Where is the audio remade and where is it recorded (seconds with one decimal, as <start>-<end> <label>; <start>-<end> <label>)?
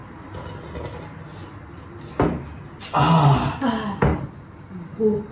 0.0-5.3 recorded